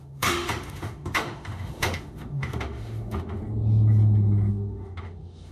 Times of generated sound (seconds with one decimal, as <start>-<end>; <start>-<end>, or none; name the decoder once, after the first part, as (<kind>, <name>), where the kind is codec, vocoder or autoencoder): 0.0-3.4 (autoencoder, DAC-VAE); 4.5-5.5